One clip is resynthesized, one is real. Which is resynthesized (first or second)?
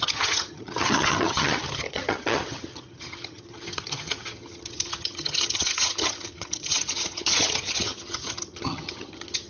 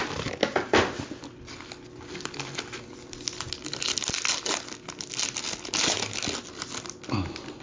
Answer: first